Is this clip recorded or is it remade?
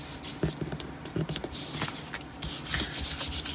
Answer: recorded